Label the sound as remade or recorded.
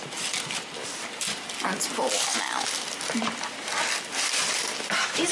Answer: recorded